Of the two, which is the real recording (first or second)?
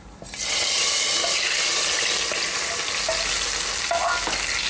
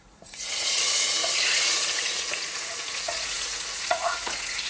first